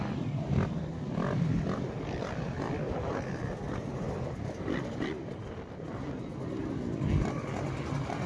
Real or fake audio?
real